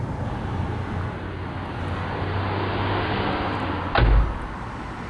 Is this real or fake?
real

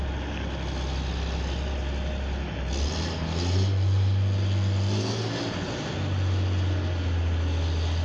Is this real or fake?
real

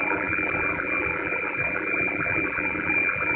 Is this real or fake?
fake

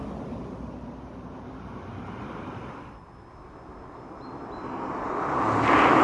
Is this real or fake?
real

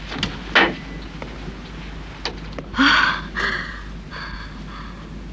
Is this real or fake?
real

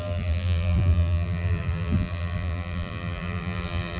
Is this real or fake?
fake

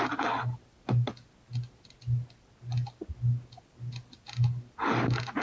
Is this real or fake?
real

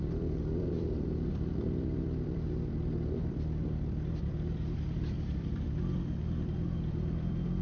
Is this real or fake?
fake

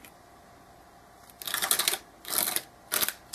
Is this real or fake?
fake